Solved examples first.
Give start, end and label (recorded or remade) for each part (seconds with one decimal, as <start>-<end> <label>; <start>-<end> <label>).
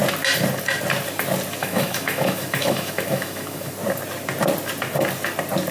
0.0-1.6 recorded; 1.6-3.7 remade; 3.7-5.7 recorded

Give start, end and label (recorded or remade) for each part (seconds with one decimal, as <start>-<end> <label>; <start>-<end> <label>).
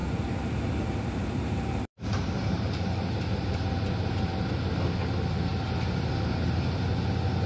0.0-4.5 remade; 4.5-5.5 recorded; 5.5-6.9 remade; 6.9-7.5 recorded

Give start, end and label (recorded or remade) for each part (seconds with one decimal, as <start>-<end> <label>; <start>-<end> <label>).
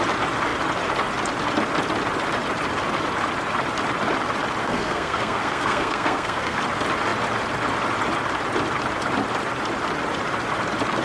0.0-4.6 recorded; 4.6-6.6 remade; 6.6-11.0 recorded